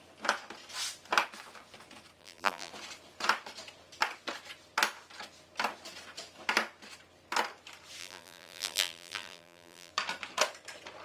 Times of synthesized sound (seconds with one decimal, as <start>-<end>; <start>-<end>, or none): 2.2-2.7; 8.0-9.9

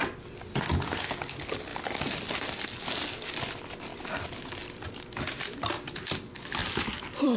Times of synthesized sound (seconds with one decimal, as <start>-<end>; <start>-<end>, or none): 1.7-2.9; 3.9-4.6; 6.6-7.4

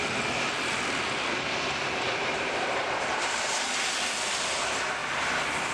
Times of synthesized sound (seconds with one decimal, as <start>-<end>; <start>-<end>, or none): 2.3-3.6

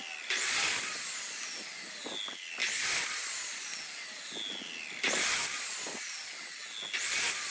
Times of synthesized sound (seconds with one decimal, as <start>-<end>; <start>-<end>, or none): none

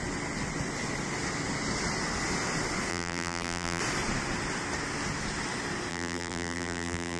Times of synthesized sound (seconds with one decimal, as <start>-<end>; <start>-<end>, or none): 2.9-3.8; 5.9-7.2

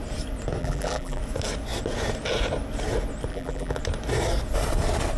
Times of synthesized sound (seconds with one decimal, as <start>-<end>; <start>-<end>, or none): 0.6-1.2; 3.3-3.8